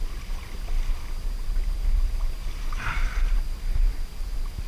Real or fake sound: real